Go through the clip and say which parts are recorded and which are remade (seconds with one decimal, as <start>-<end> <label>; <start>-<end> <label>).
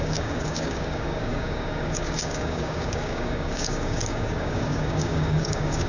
0.0-5.9 remade